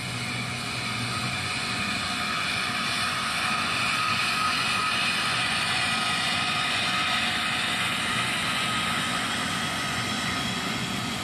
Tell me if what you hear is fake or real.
fake